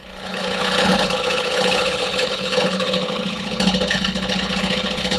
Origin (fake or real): fake